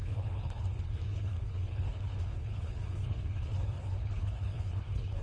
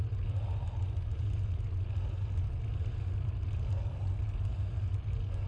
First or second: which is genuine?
second